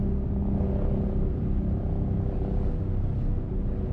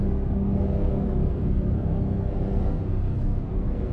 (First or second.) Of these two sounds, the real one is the first